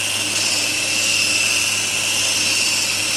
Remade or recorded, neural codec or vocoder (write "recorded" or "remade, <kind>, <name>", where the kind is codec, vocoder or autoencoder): recorded